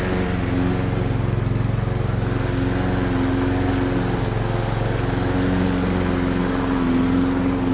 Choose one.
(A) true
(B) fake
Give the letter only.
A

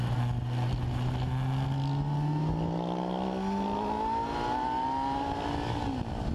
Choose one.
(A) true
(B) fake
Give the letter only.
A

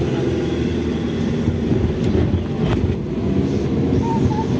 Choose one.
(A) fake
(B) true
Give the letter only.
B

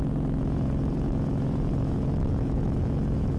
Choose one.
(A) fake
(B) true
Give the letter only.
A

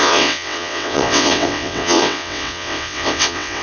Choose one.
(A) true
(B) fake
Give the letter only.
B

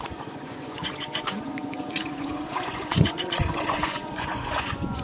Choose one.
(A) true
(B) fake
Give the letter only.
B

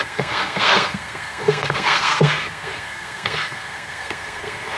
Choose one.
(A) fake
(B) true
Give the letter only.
A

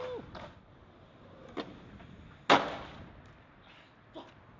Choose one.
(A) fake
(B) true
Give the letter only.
B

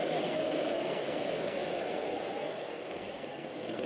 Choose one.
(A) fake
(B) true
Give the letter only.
A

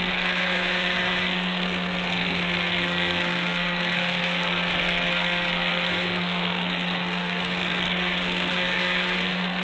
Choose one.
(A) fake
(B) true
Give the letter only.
A